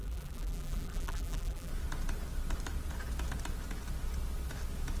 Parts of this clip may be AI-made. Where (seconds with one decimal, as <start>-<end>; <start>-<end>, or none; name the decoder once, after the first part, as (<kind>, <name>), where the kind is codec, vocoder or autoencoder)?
0.0-1.7 (vocoder, BigVGAN v2)